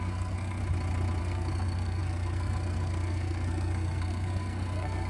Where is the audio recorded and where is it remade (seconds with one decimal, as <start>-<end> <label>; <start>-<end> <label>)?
0.0-0.6 remade; 0.6-1.2 recorded; 1.2-5.1 remade